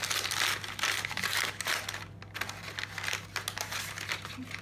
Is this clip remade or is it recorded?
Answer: recorded